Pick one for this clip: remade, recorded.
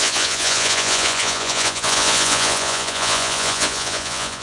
remade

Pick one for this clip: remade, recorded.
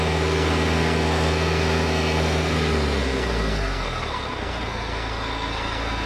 remade